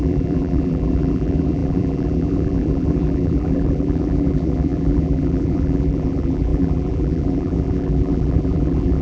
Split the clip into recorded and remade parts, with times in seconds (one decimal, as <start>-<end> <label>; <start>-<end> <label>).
0.0-9.0 remade